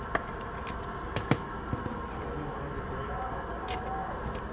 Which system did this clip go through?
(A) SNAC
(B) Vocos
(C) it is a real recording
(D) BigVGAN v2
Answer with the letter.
C